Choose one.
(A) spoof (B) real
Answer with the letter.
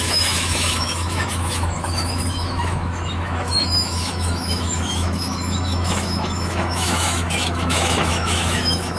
A